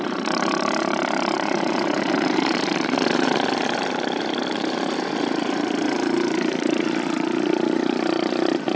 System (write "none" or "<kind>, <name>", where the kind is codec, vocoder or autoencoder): vocoder, BigVGAN v2